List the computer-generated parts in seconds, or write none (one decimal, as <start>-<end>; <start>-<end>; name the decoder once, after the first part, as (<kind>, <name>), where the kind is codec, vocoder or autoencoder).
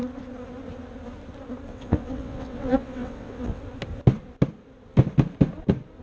1.7-3.6 (vocoder, WaveNeXt)